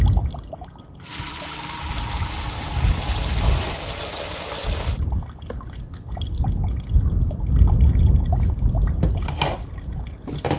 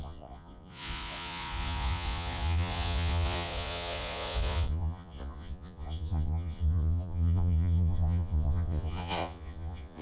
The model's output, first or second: second